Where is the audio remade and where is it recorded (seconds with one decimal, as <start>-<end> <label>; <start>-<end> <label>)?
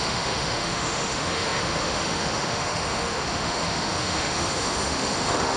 0.0-5.6 remade